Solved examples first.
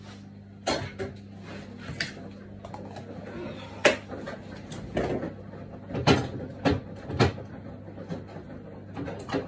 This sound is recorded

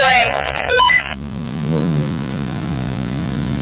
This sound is remade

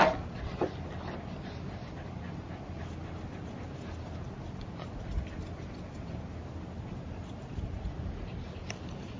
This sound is recorded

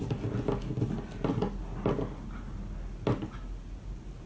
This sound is recorded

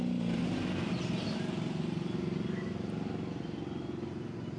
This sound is recorded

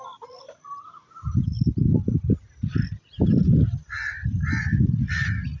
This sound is recorded